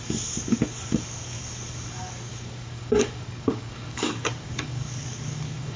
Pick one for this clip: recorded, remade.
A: remade